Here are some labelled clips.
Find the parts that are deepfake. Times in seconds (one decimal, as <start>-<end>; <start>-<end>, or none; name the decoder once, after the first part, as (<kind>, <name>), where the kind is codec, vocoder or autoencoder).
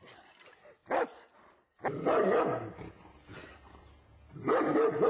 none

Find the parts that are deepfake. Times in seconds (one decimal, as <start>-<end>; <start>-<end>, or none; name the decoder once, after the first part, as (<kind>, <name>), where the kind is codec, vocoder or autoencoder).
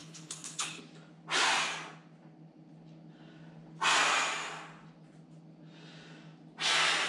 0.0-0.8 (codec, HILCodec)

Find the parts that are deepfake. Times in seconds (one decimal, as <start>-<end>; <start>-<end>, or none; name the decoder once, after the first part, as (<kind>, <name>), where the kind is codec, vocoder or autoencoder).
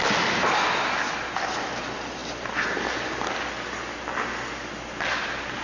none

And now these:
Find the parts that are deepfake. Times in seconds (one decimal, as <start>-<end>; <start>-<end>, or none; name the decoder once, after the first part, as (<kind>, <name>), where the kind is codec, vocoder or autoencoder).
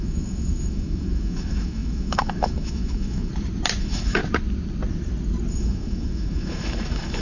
0.0-3.3 (autoencoder, DAC-VAE); 3.8-4.2; 5.5-7.2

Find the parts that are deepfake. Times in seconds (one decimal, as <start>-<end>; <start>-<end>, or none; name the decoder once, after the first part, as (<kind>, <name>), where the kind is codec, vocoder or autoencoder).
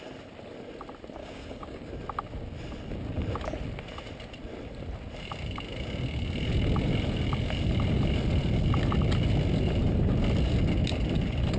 1.2-1.9 (codec, DAC)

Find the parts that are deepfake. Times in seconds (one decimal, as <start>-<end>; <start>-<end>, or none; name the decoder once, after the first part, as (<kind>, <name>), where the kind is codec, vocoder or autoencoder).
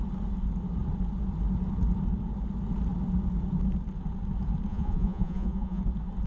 4.7-5.8 (vocoder, Vocos)